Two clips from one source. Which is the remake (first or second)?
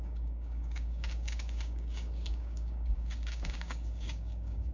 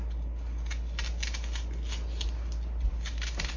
first